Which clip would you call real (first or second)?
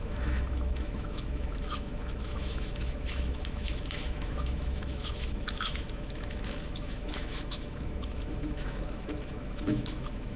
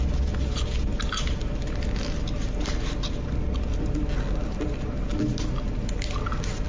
second